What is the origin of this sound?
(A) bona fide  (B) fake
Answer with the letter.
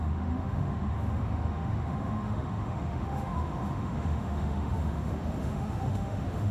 B